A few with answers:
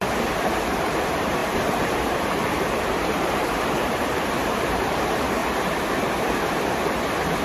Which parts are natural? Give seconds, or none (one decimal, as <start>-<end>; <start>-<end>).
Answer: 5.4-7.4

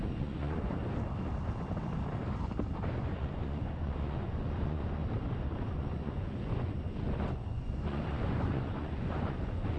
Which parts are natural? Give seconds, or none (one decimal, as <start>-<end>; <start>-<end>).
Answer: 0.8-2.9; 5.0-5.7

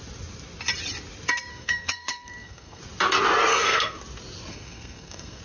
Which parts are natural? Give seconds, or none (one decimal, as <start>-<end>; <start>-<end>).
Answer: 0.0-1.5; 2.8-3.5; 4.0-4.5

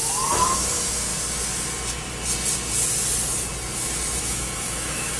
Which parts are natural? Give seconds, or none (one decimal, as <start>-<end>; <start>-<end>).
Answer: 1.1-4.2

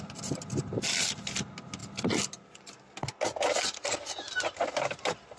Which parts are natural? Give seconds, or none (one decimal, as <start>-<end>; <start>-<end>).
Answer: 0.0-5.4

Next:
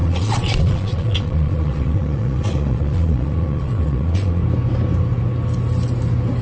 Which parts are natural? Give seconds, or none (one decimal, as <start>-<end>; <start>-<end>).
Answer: 4.4-6.4

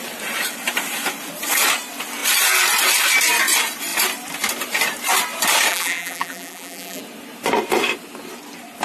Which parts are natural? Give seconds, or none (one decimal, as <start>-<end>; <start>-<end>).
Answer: 0.0-5.7; 7.0-8.8

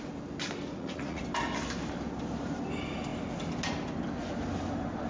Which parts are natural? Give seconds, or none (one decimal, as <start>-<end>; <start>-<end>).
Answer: 0.0-0.7; 1.2-5.1